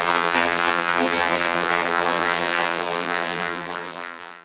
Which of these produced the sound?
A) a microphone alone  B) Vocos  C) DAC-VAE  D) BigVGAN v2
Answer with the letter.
D